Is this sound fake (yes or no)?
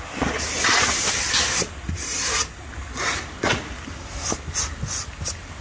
no